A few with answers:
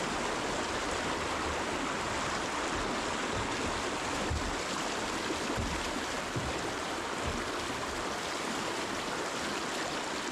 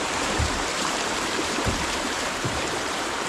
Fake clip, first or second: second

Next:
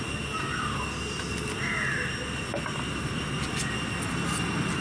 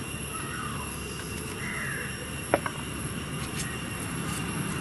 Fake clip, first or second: second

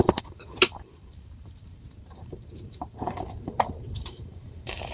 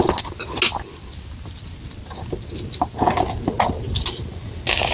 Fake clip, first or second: first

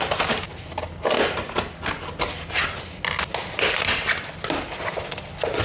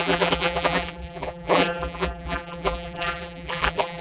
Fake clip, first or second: second